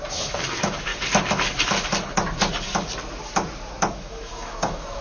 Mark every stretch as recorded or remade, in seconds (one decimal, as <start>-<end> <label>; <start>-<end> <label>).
0.0-0.9 remade; 0.9-3.9 recorded; 3.9-5.0 remade